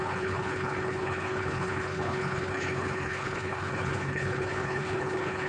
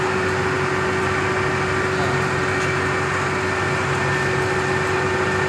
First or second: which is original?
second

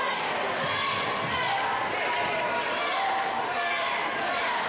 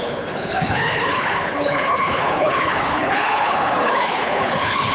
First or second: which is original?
first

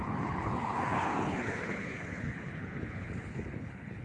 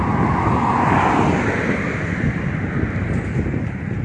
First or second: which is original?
second